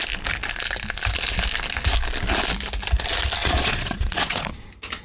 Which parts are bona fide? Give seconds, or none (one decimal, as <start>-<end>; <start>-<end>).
0.0-3.4; 4.5-5.0

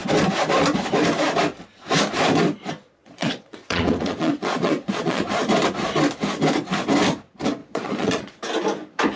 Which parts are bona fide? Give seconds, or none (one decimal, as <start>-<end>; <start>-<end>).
0.0-3.0; 5.3-7.6; 8.3-9.2

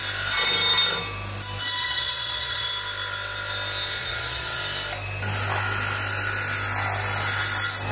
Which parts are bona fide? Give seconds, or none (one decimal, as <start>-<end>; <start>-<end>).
0.0-1.8; 2.7-4.0; 4.6-7.9